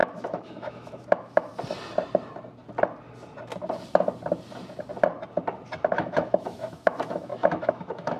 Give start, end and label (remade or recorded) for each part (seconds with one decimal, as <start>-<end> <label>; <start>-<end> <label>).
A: 0.0-1.5 remade; 1.5-5.9 recorded; 5.9-8.2 remade